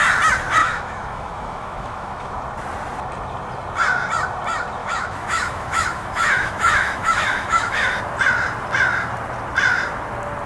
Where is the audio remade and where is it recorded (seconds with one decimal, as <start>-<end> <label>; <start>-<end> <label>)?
0.0-0.6 recorded; 0.6-2.3 remade; 2.3-4.8 recorded; 4.8-8.0 remade; 8.0-10.5 recorded